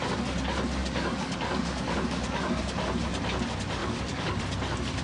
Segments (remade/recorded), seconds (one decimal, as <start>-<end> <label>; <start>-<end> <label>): 0.0-0.8 recorded; 0.8-2.6 remade; 2.6-3.8 recorded; 3.8-4.4 remade; 4.4-5.0 recorded